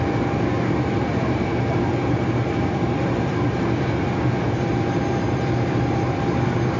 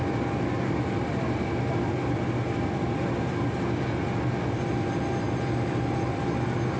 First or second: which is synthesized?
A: first